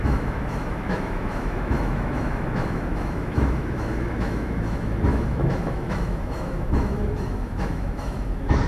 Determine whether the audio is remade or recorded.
remade